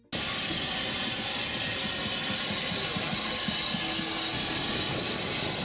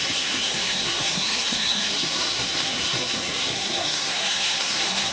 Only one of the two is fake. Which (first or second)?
second